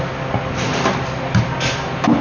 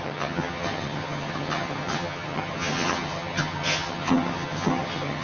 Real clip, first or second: first